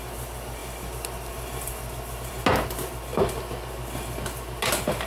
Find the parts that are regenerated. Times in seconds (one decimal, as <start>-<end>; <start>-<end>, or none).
none